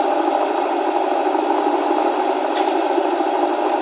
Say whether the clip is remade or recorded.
recorded